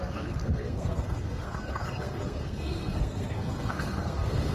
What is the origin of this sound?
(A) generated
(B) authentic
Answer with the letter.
A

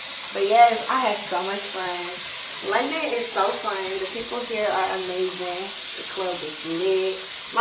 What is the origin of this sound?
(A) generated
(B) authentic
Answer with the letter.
B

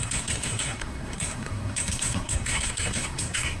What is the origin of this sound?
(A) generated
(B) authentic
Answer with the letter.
A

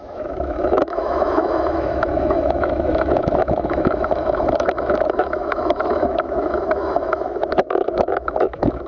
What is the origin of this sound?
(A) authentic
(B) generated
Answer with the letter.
B